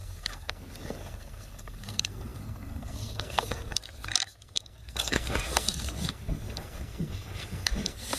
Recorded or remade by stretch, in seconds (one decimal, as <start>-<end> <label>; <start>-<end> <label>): 0.0-8.2 remade